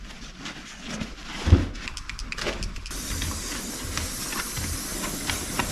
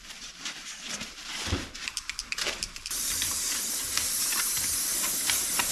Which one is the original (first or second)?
first